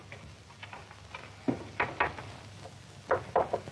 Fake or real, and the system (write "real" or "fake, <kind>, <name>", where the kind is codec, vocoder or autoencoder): real